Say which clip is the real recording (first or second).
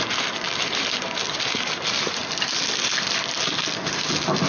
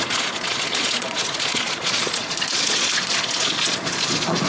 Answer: first